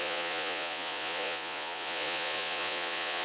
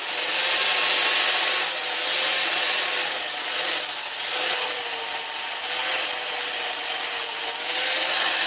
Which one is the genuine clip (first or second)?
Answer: second